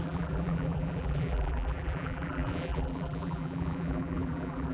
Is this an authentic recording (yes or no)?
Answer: no